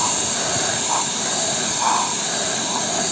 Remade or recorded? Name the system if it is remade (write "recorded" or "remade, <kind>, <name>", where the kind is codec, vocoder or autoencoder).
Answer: recorded